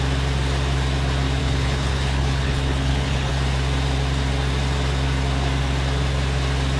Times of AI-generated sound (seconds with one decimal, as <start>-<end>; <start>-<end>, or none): 1.4-3.3